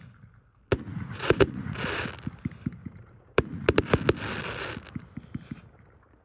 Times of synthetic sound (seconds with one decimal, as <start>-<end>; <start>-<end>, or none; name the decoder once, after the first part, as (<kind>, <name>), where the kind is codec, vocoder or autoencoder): 0.7-1.8 (vocoder, Vocos); 2.8-3.8